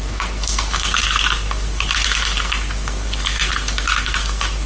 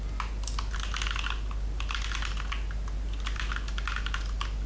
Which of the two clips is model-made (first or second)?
first